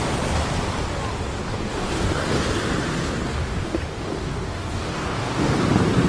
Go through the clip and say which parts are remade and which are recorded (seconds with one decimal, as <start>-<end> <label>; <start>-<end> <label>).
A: 0.0-1.4 recorded; 1.4-2.4 remade; 2.4-3.3 recorded; 3.3-5.6 remade; 5.6-6.1 recorded